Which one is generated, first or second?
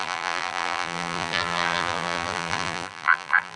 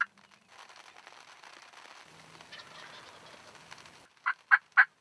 first